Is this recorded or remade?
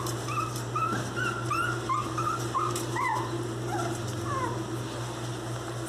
recorded